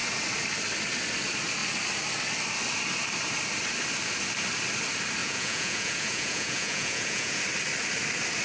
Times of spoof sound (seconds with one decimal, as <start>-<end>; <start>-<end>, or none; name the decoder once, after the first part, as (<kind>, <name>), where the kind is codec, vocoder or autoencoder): 5.2-7.4 (vocoder, Vocos)